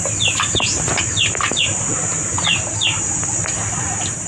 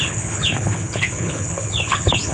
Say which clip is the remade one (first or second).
second